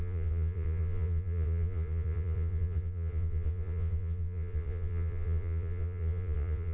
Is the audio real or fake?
fake